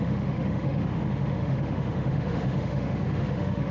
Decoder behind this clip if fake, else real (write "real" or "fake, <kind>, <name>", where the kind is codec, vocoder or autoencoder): fake, autoencoder, DAC-VAE